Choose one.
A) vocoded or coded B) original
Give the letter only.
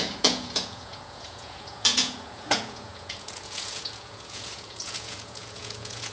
A